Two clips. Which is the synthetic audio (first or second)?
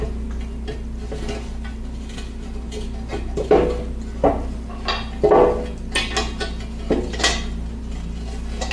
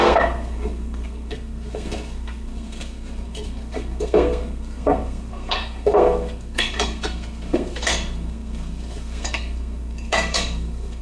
second